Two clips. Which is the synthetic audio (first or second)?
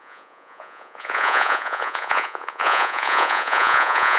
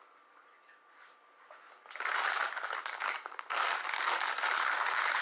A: first